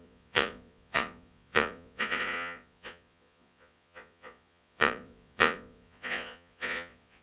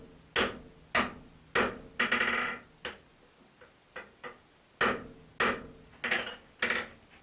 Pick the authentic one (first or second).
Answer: second